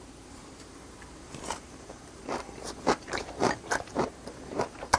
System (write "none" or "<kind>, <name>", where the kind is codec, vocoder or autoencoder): vocoder, BigVGAN v2